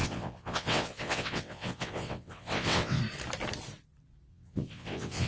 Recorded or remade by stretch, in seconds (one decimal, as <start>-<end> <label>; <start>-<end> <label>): 0.0-3.0 remade; 3.0-4.3 recorded; 4.3-5.3 remade